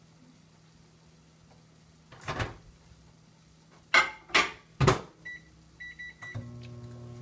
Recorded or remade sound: recorded